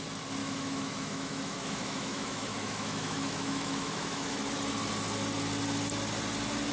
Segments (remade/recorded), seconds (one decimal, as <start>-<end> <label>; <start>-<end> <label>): 0.0-0.4 recorded; 0.4-4.4 remade; 4.4-6.7 recorded